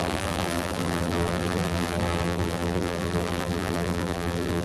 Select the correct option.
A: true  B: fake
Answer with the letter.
B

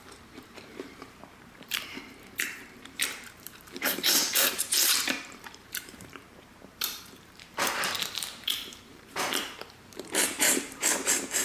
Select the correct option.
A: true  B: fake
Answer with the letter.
B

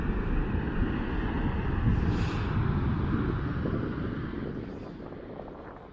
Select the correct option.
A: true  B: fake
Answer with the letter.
A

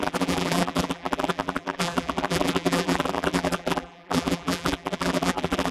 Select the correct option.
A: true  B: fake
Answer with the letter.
B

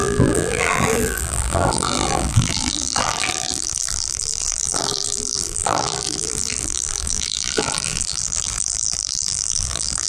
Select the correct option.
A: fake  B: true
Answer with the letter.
A